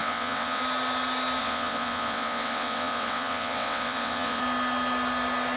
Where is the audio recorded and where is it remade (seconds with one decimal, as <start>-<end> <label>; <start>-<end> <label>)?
0.0-0.6 remade; 0.6-1.4 recorded; 1.4-4.4 remade; 4.4-5.6 recorded